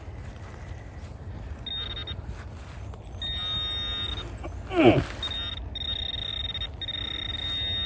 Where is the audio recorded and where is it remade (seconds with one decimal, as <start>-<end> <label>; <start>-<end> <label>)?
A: 0.0-7.9 recorded